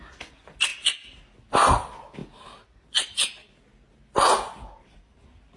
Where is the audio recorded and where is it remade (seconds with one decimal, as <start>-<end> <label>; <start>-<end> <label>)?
0.0-5.6 recorded